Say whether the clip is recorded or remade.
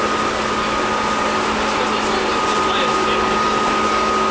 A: recorded